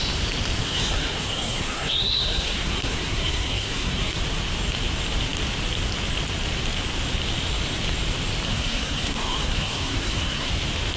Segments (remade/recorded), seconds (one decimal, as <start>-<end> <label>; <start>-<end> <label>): 0.0-0.6 recorded; 0.6-4.2 remade; 4.2-8.5 recorded; 8.5-10.5 remade; 10.5-11.0 recorded